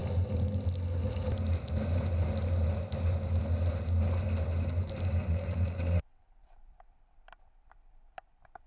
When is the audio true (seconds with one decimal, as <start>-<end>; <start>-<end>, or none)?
0.0-5.2; 6.5-8.7